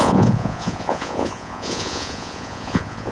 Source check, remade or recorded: remade